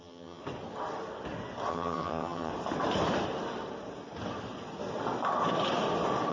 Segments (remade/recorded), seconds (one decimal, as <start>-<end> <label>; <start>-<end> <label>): 0.0-0.4 remade; 0.4-1.7 recorded; 1.7-2.5 remade; 2.5-6.3 recorded